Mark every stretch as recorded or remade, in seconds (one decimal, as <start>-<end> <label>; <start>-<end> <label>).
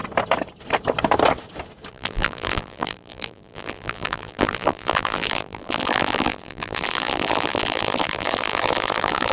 0.0-1.9 recorded; 1.9-9.3 remade